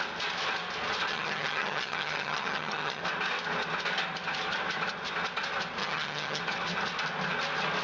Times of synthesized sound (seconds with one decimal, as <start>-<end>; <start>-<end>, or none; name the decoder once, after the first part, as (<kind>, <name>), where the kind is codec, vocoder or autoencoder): 1.1-3.0 (vocoder, HiFi-GAN); 5.8-6.4